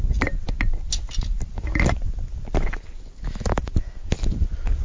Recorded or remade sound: recorded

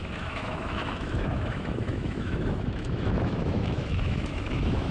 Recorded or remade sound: remade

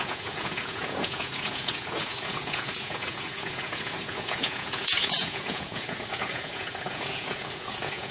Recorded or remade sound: remade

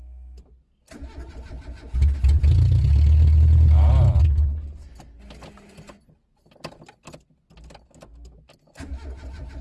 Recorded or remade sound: recorded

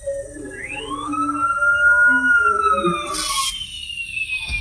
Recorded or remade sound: recorded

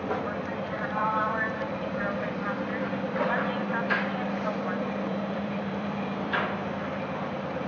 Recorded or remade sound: remade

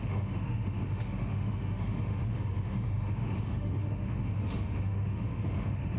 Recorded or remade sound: remade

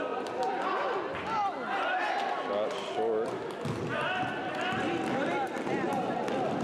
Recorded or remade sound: recorded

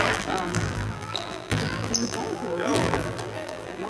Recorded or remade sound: remade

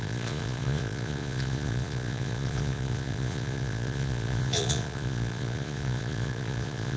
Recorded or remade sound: remade